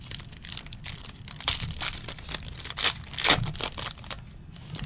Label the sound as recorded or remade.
recorded